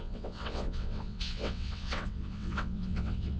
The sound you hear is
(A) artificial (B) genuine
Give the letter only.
A